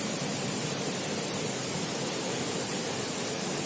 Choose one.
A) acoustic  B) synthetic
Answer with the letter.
A